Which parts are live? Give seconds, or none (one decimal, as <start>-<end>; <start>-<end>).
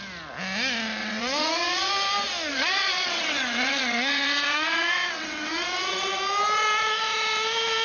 0.0-1.0; 1.9-2.5; 6.2-7.8